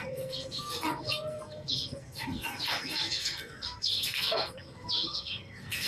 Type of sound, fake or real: fake